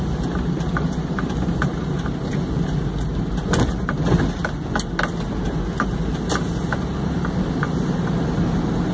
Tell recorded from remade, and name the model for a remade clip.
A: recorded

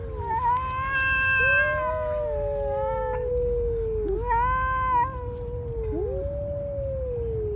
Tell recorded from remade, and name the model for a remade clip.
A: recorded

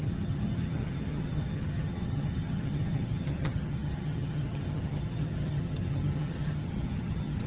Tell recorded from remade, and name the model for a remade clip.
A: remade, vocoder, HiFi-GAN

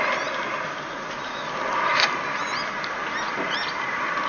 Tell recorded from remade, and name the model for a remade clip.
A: recorded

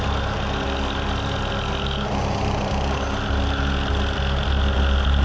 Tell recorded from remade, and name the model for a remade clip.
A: recorded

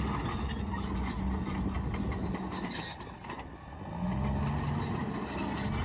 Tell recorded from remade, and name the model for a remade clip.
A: recorded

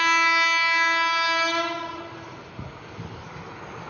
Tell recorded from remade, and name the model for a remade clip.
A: recorded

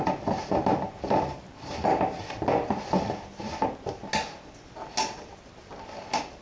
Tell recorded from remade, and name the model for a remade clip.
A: recorded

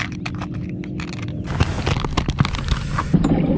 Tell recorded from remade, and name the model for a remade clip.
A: recorded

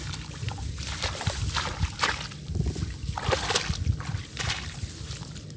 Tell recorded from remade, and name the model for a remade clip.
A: recorded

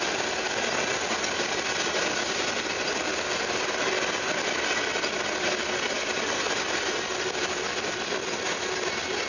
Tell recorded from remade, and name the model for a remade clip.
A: recorded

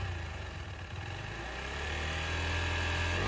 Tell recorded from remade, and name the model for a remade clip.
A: recorded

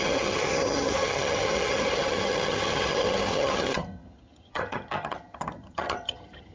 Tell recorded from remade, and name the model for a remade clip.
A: remade, vocoder, HiFi-GAN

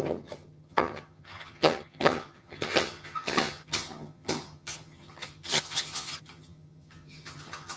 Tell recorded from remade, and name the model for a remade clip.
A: remade, vocoder, HiFi-GAN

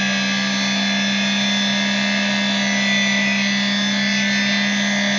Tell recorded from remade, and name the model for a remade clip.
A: recorded